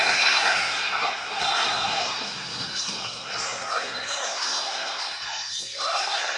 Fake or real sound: fake